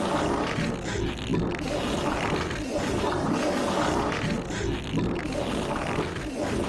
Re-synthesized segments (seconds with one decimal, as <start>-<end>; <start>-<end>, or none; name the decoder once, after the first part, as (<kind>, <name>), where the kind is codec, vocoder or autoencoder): none